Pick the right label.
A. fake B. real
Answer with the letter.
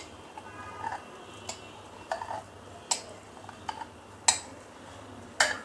B